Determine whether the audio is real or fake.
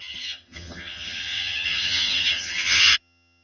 fake